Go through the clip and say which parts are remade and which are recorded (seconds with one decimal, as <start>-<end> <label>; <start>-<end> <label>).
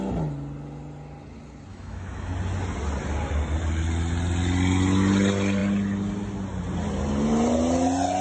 0.0-1.7 recorded; 1.7-2.3 remade; 2.3-8.2 recorded